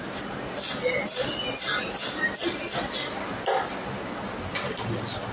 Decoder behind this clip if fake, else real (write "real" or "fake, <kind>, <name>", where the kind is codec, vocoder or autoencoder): real